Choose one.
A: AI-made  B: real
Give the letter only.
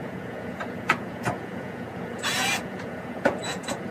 A